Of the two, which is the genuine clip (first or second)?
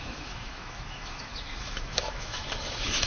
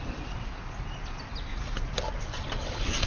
second